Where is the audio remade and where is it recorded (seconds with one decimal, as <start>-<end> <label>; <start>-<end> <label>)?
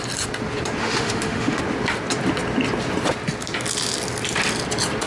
0.0-0.8 recorded; 0.8-1.6 remade; 1.6-5.1 recorded